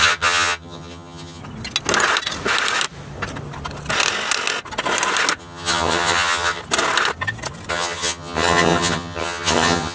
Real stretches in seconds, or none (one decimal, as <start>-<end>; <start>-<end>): 1.4-5.4; 6.6-7.7